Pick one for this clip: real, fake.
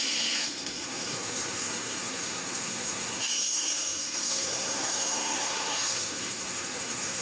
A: fake